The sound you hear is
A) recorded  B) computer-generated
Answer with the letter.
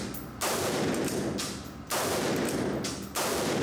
A